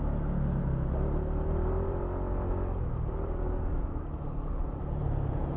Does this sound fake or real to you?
real